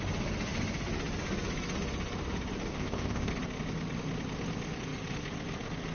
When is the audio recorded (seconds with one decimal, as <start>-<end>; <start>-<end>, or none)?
0.0-2.7; 3.3-5.9